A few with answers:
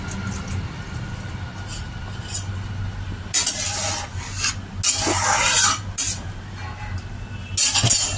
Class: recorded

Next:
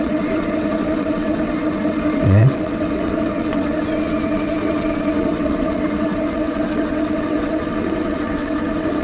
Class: remade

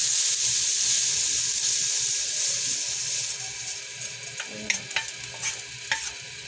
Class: recorded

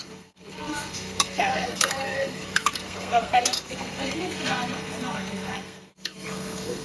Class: remade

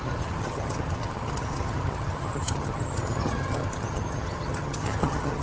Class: remade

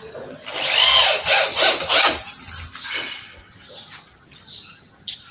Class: recorded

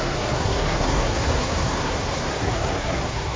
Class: remade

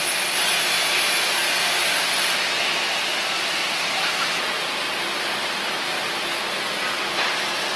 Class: recorded